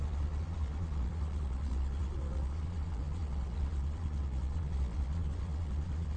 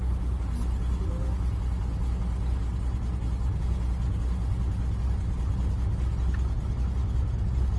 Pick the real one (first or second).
second